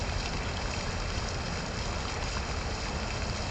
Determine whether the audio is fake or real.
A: real